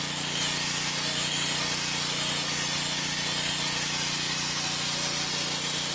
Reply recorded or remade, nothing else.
recorded